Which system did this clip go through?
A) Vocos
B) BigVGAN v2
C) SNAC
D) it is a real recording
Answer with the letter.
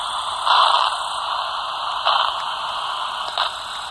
D